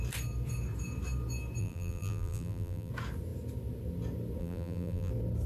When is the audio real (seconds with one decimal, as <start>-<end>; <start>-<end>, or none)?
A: 0.0-1.6; 2.9-4.4; 5.1-5.5